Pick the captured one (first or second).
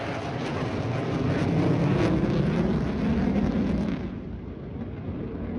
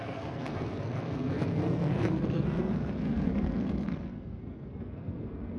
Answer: first